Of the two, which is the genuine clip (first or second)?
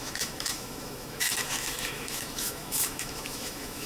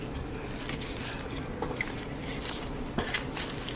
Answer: second